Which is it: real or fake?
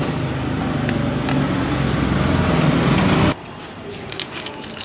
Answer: real